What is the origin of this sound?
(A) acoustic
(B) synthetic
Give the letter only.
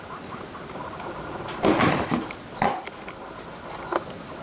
A